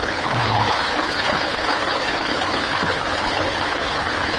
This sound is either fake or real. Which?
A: fake